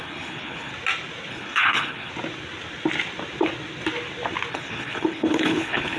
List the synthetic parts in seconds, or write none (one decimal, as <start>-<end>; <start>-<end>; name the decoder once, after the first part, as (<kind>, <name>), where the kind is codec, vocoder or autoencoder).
0.0-0.7 (codec, HILCodec); 1.3-2.1; 4.5-6.0